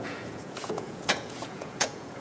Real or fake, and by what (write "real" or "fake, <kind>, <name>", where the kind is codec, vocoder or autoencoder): fake, vocoder, Vocos